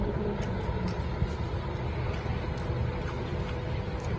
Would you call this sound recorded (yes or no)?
yes